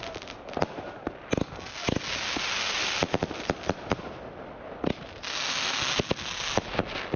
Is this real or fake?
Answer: real